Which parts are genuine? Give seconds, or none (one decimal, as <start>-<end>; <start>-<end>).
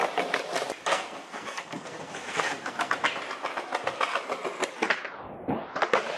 0.0-0.9; 2.9-6.2